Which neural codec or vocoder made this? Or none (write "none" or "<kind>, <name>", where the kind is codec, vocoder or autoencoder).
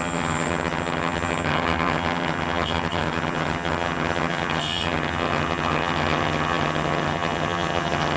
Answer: vocoder, HiFi-GAN